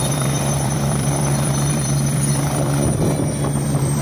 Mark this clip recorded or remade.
remade